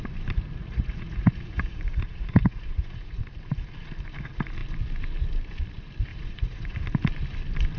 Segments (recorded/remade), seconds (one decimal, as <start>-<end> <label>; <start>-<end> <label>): 0.0-0.6 recorded; 0.6-3.2 remade; 3.2-6.1 recorded; 6.1-6.8 remade; 6.8-7.8 recorded